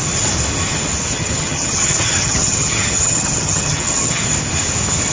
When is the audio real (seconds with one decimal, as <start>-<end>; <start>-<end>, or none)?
0.0-1.1; 4.2-5.1